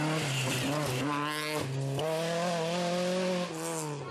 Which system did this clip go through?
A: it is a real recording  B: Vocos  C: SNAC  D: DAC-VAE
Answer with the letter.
A